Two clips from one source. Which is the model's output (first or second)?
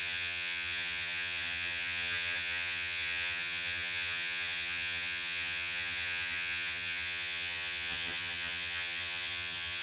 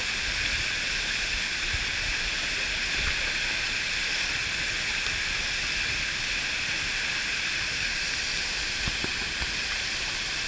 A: first